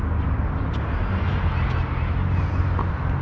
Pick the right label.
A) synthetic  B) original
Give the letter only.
B